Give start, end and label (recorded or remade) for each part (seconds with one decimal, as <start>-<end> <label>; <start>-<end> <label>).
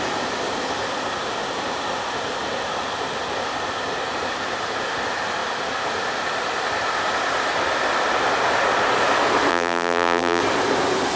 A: 0.0-9.5 recorded; 9.5-10.4 remade; 10.4-11.2 recorded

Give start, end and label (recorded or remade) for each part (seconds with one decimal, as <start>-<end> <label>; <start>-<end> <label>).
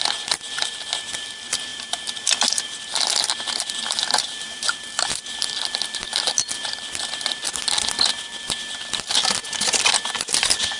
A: 0.0-4.0 recorded; 4.0-7.1 remade; 7.1-10.8 recorded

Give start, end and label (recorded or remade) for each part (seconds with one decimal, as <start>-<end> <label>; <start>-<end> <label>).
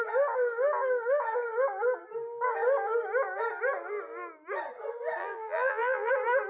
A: 0.0-5.2 recorded; 5.2-6.1 remade; 6.1-6.5 recorded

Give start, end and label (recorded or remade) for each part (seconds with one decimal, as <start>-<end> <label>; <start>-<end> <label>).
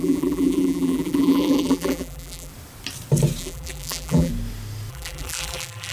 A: 0.0-2.5 remade; 2.5-3.4 recorded; 3.4-4.3 remade; 4.3-4.9 recorded; 4.9-5.9 remade